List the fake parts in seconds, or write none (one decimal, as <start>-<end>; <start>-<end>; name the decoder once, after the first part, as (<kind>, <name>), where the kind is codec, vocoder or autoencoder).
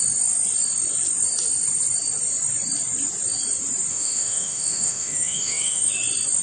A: 3.9-5.9 (autoencoder, DAC-VAE)